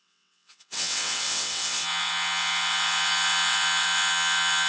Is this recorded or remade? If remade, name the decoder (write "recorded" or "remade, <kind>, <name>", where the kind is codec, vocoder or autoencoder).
remade, vocoder, WaveNeXt